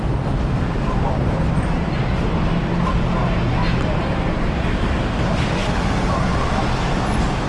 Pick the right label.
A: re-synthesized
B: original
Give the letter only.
B